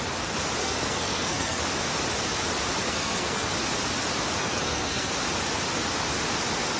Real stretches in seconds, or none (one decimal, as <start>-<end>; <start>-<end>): 0.0-0.6; 1.6-2.8; 3.5-4.4; 5.1-6.8